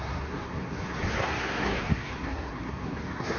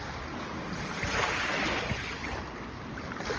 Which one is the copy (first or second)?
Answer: first